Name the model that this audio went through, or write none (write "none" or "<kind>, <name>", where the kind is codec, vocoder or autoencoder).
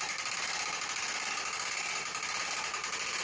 none